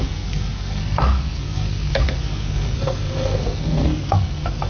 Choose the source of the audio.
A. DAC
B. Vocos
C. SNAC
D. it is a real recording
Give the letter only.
C